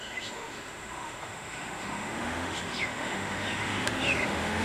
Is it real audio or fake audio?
fake